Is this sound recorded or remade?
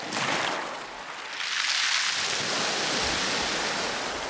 recorded